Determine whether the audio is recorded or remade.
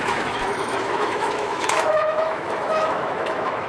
remade